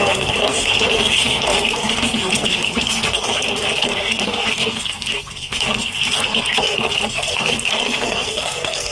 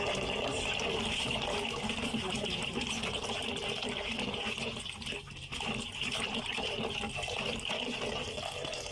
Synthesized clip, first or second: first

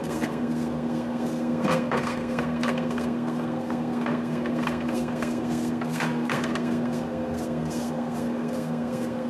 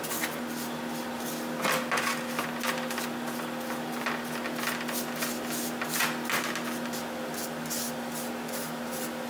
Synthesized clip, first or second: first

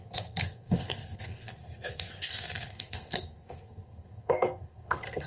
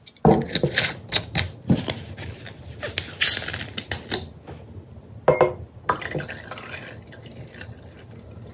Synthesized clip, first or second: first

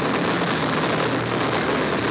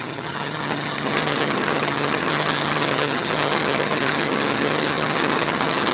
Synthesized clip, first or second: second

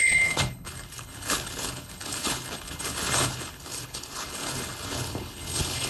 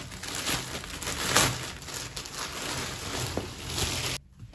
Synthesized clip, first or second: first